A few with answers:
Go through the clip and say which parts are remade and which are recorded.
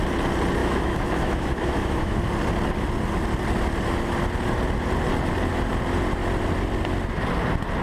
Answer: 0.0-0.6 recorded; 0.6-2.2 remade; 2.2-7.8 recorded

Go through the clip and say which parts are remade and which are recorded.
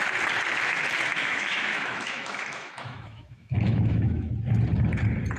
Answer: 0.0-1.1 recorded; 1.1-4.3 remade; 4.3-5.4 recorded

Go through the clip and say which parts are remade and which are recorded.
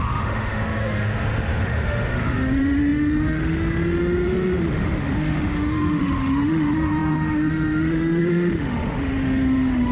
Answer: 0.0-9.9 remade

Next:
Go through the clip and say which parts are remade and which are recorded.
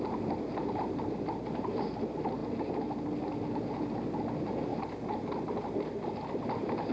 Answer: 0.0-6.9 recorded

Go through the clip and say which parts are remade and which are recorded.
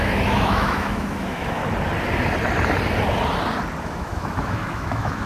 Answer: 0.0-1.6 remade; 1.6-3.8 recorded; 3.8-5.3 remade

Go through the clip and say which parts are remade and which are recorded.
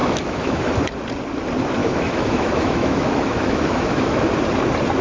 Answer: 0.0-0.6 remade; 0.6-1.8 recorded; 1.8-4.2 remade; 4.2-5.0 recorded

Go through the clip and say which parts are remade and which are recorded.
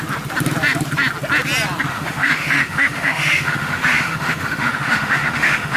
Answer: 0.0-1.9 recorded; 1.9-5.8 remade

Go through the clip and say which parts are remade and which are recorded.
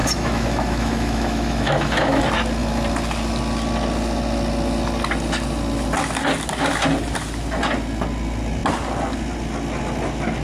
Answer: 0.0-2.2 remade; 2.2-10.4 recorded